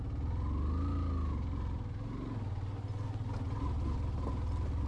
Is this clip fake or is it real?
real